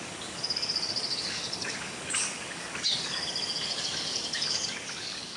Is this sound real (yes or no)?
no